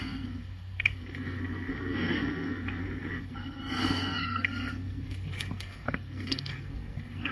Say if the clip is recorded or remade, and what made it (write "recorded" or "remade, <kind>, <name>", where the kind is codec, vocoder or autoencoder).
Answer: remade, codec, SNAC